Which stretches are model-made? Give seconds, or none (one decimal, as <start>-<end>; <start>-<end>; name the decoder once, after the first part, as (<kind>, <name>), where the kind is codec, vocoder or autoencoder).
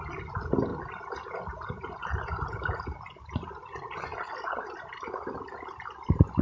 none